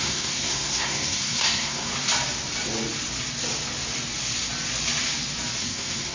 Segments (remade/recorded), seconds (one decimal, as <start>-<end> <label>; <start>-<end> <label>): 0.0-1.9 remade; 1.9-5.6 recorded; 5.6-6.1 remade